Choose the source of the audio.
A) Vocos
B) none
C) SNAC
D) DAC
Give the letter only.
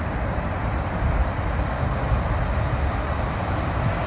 B